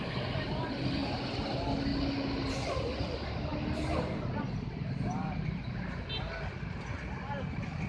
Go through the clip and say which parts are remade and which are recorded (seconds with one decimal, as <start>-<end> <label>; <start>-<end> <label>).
0.0-7.9 recorded